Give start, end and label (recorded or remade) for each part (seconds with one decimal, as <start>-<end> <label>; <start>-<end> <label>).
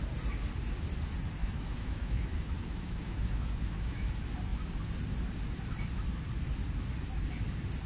0.0-1.4 recorded; 1.4-4.1 remade; 4.1-7.9 recorded